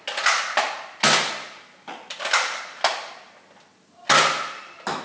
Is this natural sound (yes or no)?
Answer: yes